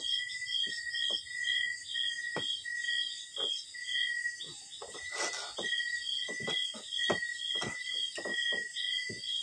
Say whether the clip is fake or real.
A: real